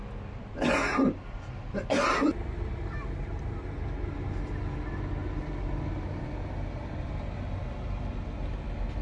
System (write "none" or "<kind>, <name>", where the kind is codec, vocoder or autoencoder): none